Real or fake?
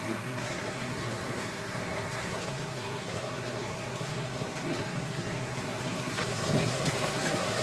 fake